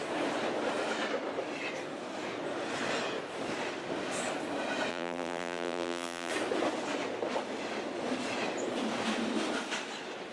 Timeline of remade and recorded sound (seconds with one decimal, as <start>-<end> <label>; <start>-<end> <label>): 0.0-4.9 recorded; 4.9-6.3 remade; 6.3-10.3 recorded